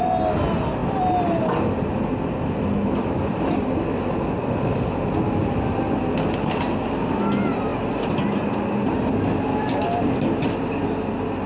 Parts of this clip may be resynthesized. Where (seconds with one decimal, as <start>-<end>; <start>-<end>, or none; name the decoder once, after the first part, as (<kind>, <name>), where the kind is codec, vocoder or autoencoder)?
none